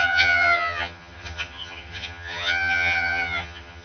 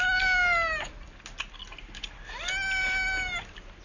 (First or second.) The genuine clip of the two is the second